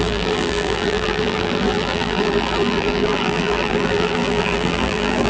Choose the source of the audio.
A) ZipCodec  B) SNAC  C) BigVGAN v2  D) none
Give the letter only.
C